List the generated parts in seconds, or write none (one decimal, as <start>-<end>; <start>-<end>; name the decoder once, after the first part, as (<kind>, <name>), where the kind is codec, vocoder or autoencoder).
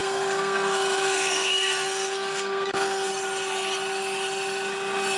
0.0-3.1 (codec, SNAC)